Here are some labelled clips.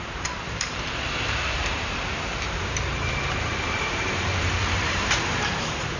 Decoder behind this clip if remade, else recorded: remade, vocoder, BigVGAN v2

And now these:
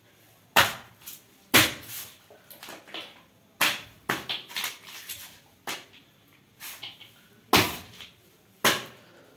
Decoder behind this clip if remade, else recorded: recorded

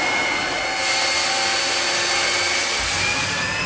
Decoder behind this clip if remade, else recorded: recorded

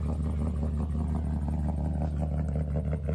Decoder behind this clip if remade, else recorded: recorded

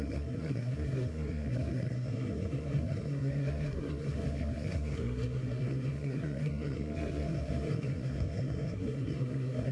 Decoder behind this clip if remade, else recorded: remade, codec, SNAC